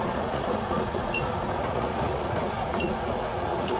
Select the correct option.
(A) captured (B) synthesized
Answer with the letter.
B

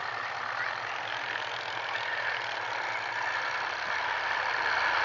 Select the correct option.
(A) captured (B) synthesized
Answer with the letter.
A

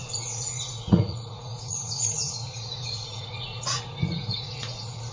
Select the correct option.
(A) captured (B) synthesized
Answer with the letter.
B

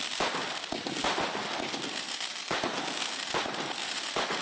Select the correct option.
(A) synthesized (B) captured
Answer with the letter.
B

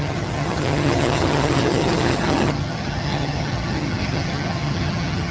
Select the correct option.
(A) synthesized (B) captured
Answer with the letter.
A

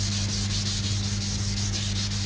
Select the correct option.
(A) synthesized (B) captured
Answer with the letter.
B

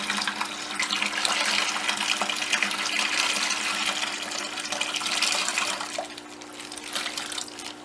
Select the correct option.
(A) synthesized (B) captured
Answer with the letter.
B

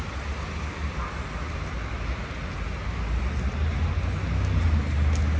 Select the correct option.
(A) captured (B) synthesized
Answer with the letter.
A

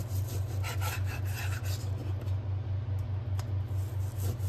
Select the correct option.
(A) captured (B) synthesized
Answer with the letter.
A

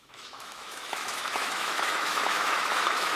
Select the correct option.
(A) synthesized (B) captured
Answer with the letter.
A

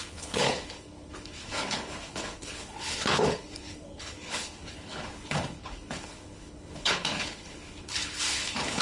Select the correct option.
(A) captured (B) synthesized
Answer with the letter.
B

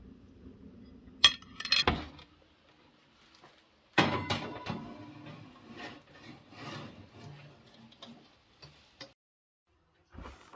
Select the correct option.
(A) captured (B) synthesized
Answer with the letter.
A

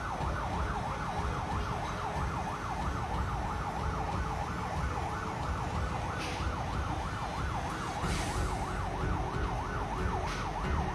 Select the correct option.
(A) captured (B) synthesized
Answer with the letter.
A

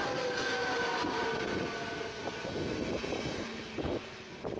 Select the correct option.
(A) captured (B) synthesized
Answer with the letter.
A